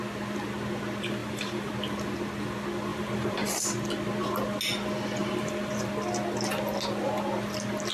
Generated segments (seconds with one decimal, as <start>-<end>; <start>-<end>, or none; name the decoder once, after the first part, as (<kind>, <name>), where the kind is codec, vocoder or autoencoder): 1.2-1.7 (vocoder, BigVGAN v2); 2.9-3.5; 5.2-5.9